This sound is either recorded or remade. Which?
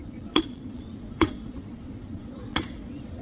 remade